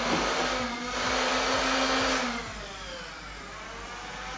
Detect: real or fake real